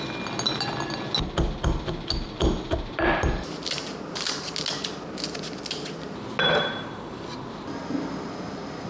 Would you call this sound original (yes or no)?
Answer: yes